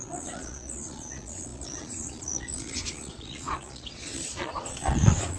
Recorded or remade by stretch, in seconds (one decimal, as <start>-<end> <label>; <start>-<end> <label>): 0.0-5.4 remade

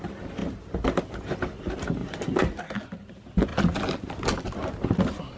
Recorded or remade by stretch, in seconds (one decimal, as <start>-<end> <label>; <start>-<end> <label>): 0.0-0.4 recorded; 0.4-1.0 remade; 1.0-2.0 recorded; 2.0-2.6 remade; 2.6-5.4 recorded

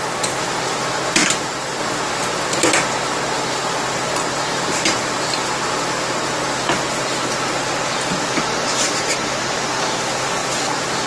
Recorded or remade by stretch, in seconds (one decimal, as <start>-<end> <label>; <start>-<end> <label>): 0.0-1.2 recorded; 1.2-1.8 remade; 1.8-4.5 recorded; 4.5-6.2 remade; 6.2-10.4 recorded; 10.4-11.1 remade

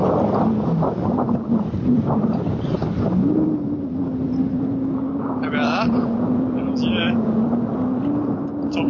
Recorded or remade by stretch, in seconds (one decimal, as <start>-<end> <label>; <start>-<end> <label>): 0.0-8.9 recorded